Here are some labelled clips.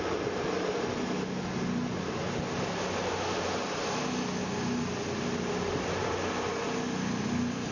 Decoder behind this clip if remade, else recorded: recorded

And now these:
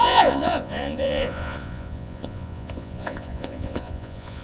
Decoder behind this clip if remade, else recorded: remade, vocoder, Vocos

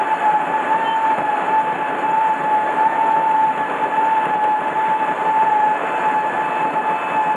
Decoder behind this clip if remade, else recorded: recorded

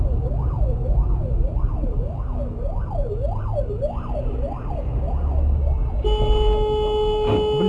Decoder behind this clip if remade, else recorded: recorded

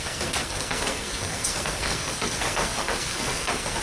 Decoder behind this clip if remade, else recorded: remade, codec, SNAC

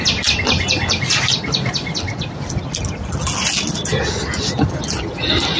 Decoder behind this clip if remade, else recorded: recorded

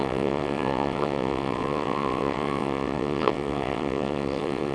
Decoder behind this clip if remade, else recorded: remade, vocoder, WaveNeXt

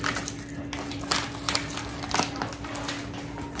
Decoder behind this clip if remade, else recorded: recorded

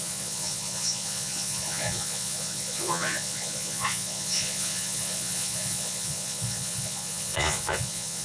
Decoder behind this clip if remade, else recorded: remade, vocoder, Vocos